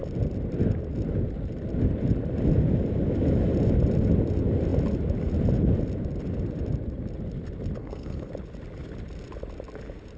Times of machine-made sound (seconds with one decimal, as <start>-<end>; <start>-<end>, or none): 7.8-8.3

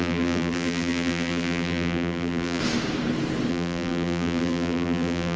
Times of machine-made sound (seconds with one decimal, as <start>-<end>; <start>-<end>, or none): 0.0-2.6; 3.5-5.4

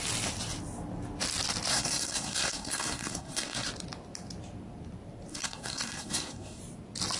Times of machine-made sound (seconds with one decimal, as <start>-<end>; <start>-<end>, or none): 1.7-3.7; 5.3-6.6

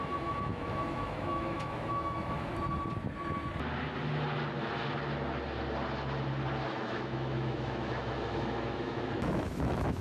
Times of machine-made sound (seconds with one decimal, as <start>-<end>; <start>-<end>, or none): 0.0-2.5; 6.7-10.0

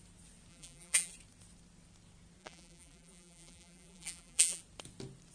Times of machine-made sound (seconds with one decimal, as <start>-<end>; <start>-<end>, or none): 0.5-1.1; 2.4-4.6

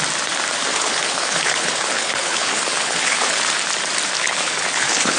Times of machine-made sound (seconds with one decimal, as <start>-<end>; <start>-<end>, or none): 0.7-3.4; 4.2-5.2